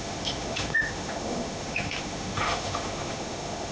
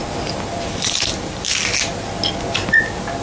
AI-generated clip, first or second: first